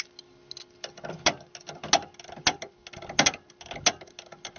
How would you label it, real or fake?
real